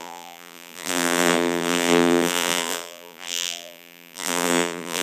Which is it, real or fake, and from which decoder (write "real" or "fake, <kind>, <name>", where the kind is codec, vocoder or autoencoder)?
fake, vocoder, BigVGAN v2